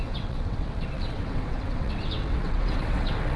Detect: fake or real fake